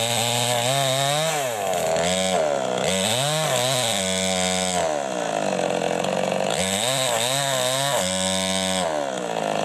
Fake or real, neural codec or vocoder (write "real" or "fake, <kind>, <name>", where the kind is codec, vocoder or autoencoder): real